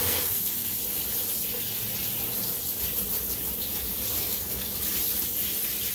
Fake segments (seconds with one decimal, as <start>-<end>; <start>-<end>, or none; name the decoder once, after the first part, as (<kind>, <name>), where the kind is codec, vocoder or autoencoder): 0.0-0.7 (codec, SNAC); 4.2-4.7